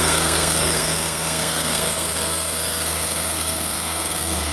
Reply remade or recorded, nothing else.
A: remade